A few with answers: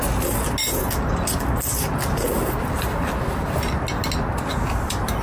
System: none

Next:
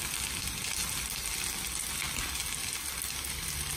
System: none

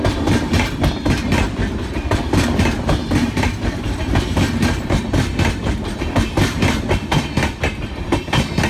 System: vocoder, BigVGAN v2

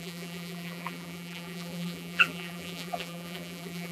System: vocoder, BigVGAN v2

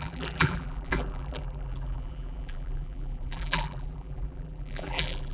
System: vocoder, BigVGAN v2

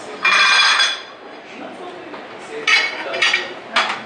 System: none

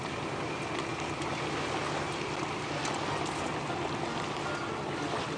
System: none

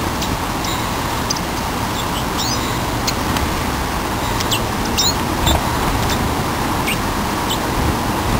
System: none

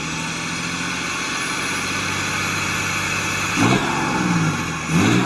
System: none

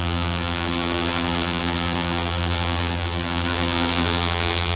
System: vocoder, BigVGAN v2